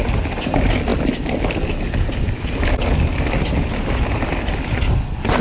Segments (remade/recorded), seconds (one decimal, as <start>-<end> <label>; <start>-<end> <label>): 0.0-5.4 recorded